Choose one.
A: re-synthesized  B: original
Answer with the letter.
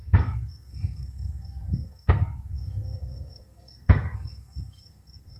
A